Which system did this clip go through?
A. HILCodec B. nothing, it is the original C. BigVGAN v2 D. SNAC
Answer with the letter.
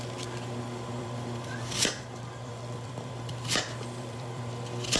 C